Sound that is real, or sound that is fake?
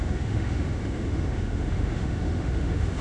fake